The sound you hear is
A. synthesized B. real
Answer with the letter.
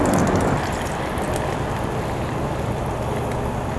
B